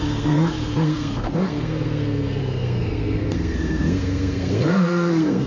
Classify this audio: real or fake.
fake